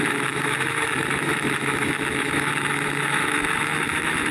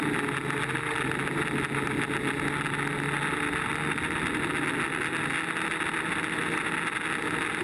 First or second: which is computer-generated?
first